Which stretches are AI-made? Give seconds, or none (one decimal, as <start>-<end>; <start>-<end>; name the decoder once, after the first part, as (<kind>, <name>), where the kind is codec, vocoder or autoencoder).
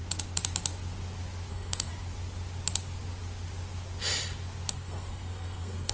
1.5-1.9 (codec, SNAC); 4.7-5.9